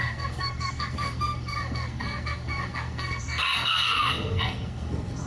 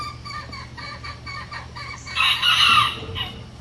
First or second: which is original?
second